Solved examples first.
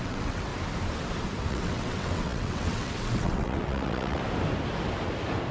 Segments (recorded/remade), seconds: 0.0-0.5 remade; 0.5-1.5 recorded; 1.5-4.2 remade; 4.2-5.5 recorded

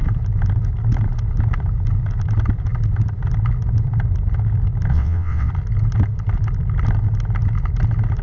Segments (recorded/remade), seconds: 0.0-4.9 recorded; 4.9-5.5 remade; 5.5-8.2 recorded

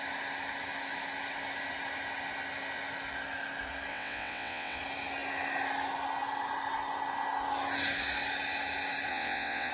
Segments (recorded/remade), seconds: 0.0-3.9 recorded; 3.9-4.8 remade; 4.8-9.1 recorded; 9.1-9.7 remade

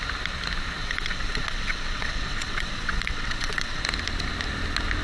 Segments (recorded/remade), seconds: 0.0-0.8 recorded; 0.8-3.8 remade; 3.8-5.0 recorded

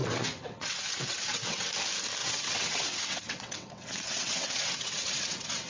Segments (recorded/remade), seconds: 0.0-1.7 remade; 1.7-2.2 recorded; 2.2-5.7 remade

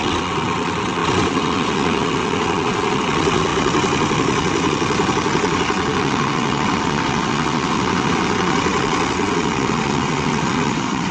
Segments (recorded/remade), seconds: 0.0-11.1 remade

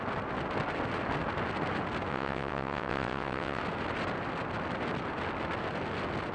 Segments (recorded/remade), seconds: 0.0-2.1 recorded; 2.1-3.6 remade; 3.6-6.3 recorded